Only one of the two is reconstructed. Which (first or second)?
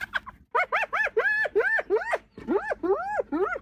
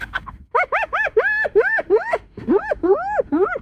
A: second